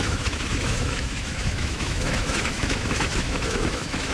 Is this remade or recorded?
remade